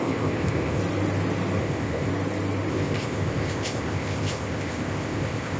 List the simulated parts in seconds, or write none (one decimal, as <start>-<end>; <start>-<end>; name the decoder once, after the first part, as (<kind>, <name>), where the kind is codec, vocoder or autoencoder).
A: 0.0-0.8 (codec, ZipCodec); 1.6-2.1; 2.7-5.6